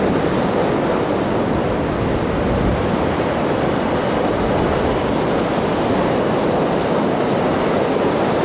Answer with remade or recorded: recorded